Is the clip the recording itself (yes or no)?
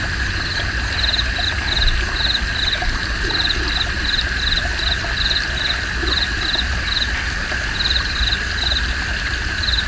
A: yes